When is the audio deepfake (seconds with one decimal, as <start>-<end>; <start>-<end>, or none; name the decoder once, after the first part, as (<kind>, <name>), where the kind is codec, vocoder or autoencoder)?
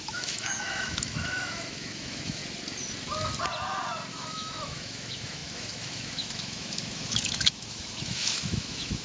0.0-2.4 (autoencoder, DAC-VAE); 4.1-9.0